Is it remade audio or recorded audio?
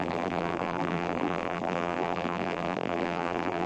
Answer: remade